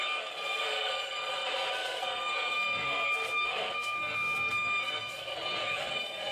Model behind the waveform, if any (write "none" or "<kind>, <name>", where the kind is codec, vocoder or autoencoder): codec, SNAC